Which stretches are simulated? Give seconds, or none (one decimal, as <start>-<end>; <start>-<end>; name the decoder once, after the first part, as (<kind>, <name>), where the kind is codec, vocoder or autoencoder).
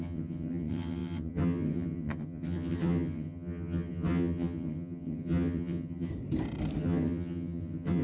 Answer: 0.0-6.1 (vocoder, HiFi-GAN); 6.8-8.0